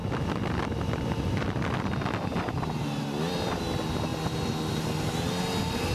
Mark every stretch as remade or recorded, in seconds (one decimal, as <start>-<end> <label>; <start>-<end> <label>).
0.0-3.5 remade; 3.5-5.9 recorded